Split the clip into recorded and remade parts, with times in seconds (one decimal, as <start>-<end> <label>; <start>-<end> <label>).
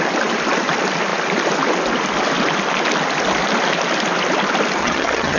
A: 0.0-4.8 recorded; 4.8-5.4 remade